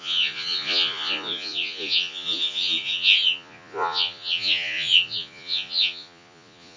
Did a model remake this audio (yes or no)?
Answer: yes